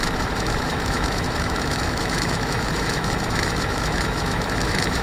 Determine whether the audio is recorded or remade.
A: remade